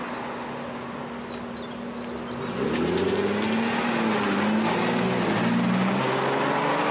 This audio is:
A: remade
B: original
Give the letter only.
B